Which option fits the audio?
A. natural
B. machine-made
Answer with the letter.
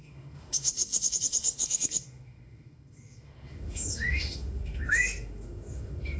B